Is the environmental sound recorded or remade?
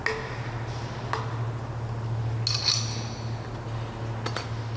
recorded